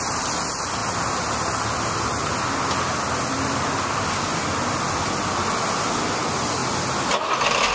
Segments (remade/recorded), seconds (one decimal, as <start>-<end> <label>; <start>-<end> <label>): 0.0-0.8 remade; 0.8-3.3 recorded; 3.3-6.6 remade; 6.6-7.3 recorded; 7.3-7.7 remade